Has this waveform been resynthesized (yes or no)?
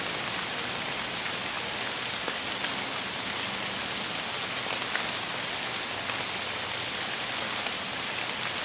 no